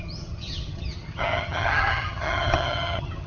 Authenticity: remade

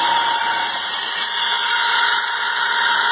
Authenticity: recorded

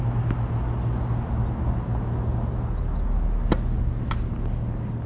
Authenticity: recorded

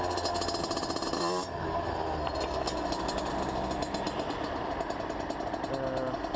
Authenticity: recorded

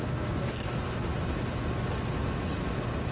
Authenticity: recorded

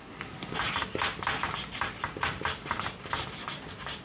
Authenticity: recorded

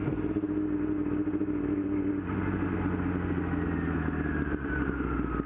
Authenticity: recorded